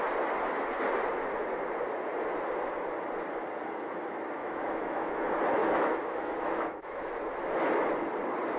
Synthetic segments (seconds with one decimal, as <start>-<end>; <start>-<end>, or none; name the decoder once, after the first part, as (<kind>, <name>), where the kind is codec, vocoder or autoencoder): 4.4-5.1 (autoencoder, DAC-VAE); 5.6-7.1